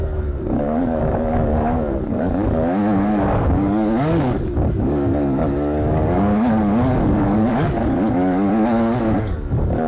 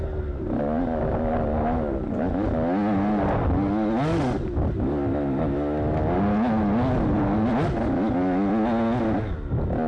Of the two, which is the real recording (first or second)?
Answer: second